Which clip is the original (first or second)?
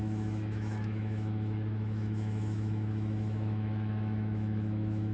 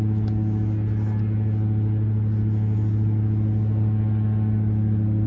second